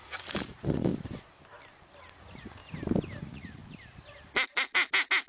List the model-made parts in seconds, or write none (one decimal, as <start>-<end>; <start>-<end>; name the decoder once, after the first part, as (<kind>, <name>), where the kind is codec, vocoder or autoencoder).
0.0-0.9 (vocoder, Vocos); 2.2-2.6; 3.2-3.6